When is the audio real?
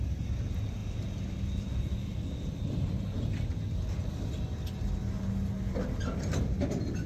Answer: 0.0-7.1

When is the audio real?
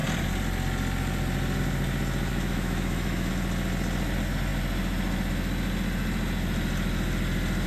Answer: 0.0-2.3; 3.3-7.7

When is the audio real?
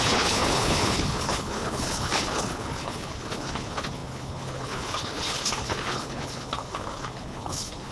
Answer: none